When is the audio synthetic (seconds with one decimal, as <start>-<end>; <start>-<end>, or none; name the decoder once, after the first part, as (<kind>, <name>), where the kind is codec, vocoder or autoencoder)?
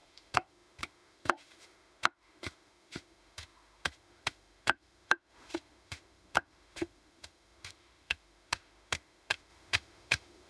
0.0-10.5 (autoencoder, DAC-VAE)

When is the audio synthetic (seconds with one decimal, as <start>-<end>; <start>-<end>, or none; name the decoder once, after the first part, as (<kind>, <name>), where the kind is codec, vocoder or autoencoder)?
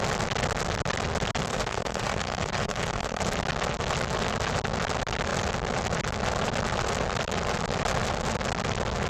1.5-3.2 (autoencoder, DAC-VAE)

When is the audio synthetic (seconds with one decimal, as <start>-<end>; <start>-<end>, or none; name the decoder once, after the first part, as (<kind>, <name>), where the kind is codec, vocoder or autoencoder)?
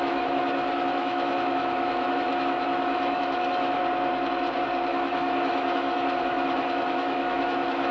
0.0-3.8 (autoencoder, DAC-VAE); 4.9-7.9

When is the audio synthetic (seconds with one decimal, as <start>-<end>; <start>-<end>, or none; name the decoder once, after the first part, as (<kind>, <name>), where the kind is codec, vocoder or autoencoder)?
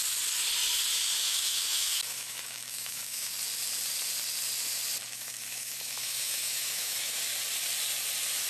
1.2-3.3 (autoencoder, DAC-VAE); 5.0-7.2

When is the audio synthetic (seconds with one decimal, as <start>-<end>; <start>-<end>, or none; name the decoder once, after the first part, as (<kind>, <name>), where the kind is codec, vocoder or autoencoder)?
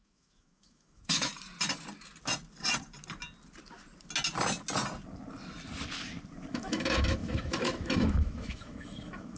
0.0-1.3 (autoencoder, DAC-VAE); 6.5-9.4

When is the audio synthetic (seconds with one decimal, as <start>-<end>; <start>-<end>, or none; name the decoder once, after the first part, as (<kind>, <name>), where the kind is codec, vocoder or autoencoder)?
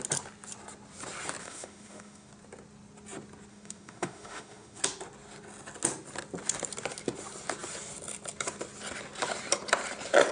1.4-2.3 (autoencoder, DAC-VAE); 3.5-4.8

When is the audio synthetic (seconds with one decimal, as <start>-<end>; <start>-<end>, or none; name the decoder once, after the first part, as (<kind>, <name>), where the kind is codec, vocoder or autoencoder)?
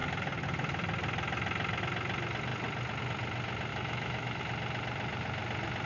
3.7-4.4 (autoencoder, DAC-VAE)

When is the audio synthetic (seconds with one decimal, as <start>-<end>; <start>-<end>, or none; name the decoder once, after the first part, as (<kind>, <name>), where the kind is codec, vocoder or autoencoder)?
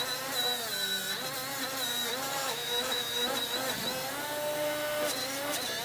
2.4-3.3 (autoencoder, DAC-VAE)